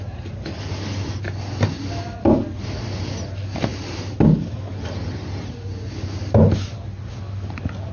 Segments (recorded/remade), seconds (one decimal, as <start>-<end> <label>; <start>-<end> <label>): 0.0-7.9 recorded